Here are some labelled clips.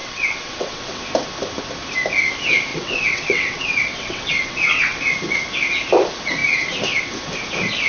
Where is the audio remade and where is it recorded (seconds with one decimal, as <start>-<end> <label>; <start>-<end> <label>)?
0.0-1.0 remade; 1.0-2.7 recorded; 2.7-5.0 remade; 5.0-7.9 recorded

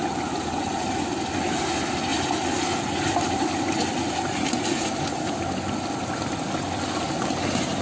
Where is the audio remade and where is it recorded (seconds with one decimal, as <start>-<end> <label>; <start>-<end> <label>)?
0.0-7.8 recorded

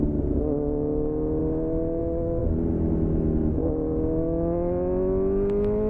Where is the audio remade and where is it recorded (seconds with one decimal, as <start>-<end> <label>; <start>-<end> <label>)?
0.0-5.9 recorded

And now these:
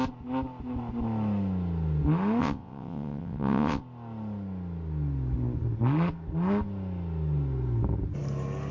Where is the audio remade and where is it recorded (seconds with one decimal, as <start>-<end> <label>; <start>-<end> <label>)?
0.0-2.4 recorded; 2.4-3.8 remade; 3.8-8.7 recorded

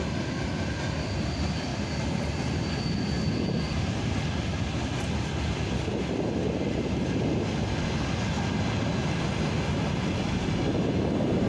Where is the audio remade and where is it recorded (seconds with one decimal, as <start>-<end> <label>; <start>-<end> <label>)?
0.0-11.5 recorded

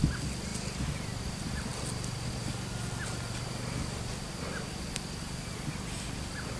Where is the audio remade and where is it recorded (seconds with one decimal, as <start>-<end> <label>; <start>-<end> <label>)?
0.0-6.6 recorded